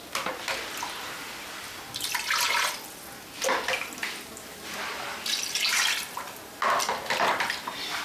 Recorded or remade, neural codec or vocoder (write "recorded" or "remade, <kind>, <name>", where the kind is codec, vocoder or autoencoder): recorded